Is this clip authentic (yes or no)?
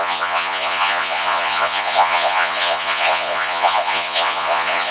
no